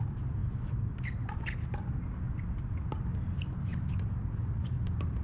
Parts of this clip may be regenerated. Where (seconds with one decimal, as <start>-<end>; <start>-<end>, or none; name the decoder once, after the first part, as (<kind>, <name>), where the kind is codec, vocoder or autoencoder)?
none